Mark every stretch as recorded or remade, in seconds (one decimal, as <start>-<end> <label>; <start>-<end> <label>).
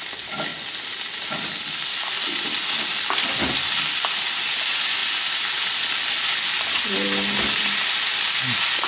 0.0-8.9 recorded